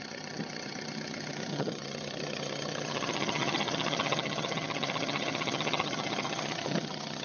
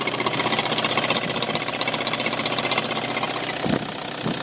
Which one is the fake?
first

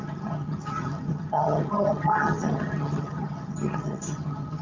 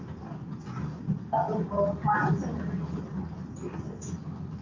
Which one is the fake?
first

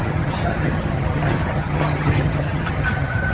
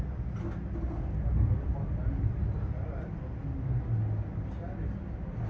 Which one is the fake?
first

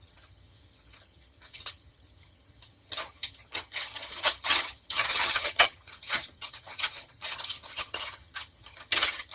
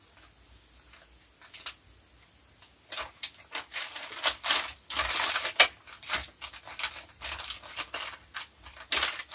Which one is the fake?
first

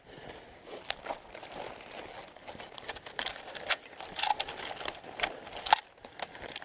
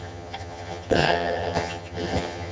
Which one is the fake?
second